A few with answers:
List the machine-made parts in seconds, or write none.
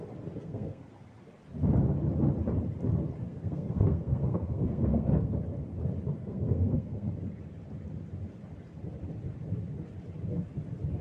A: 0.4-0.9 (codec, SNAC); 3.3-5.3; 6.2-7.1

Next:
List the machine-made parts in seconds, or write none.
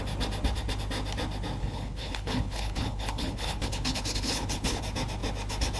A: 1.6-4.8 (codec, HILCodec)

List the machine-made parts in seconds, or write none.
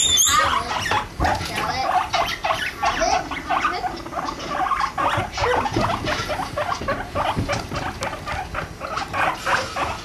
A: none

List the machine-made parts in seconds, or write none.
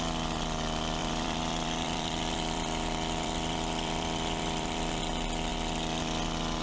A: 1.0-5.0 (vocoder, BigVGAN v2)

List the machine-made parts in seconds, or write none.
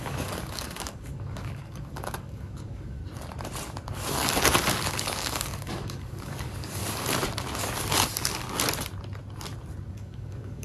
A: 0.0-3.0 (codec, DAC); 4.9-6.8; 9.9-10.6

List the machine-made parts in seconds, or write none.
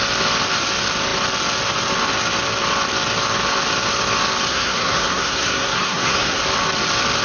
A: 4.5-6.4 (codec, SNAC)